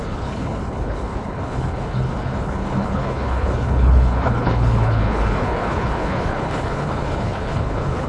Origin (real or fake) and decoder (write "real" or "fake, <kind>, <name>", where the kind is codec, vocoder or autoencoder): fake, codec, HILCodec